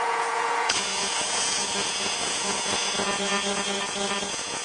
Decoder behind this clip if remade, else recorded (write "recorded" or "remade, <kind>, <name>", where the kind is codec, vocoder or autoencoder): remade, vocoder, Vocos